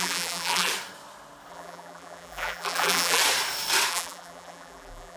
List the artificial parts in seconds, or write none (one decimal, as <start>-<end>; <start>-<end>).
0.0-0.7; 1.5-3.2; 3.9-5.2